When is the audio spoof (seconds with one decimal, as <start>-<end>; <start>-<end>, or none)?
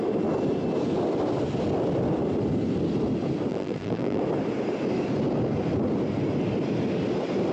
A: 3.5-4.2